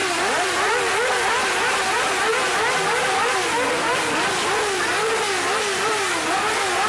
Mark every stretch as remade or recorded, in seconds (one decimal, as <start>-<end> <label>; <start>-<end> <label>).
0.0-6.9 recorded